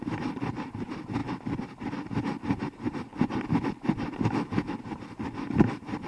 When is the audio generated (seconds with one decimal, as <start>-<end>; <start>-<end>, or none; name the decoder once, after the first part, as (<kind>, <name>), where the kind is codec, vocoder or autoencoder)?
none